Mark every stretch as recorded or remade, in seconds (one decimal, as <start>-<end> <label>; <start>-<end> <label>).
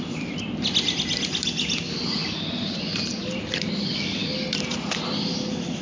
0.0-5.8 recorded